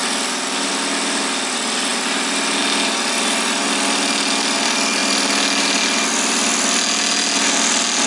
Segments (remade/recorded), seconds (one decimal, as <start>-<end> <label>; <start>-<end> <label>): 0.0-8.1 recorded